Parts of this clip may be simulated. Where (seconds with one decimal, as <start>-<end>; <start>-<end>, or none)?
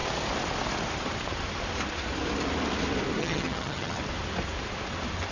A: 3.2-4.0